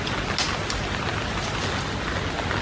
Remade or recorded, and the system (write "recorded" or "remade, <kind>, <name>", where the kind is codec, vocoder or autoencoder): recorded